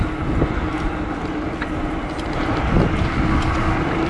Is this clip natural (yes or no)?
yes